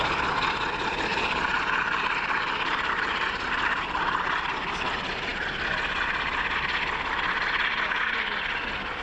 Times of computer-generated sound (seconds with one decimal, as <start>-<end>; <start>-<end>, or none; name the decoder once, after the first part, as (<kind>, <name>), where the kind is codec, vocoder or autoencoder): 1.1-4.0 (vocoder, BigVGAN v2)